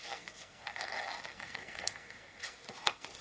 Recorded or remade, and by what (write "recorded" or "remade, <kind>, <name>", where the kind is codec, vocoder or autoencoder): remade, codec, SNAC